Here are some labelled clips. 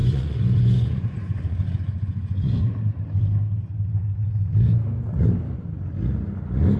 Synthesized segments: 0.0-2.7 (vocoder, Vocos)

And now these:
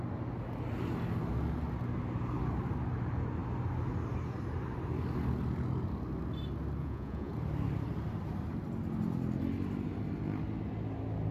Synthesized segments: 6.8-7.3 (vocoder, Vocos)

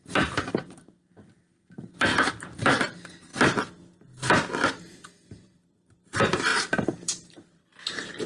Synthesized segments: 0.0-2.1 (vocoder, BigVGAN v2); 2.8-3.3; 4.8-8.3

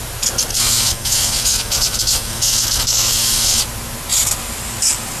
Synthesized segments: 0.5-3.6 (codec, SNAC)

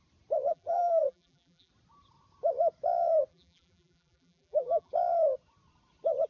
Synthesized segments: 0.5-1.7 (vocoder, BigVGAN v2); 3.3-4.9